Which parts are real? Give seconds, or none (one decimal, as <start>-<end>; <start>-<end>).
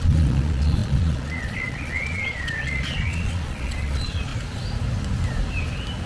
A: 4.3-6.1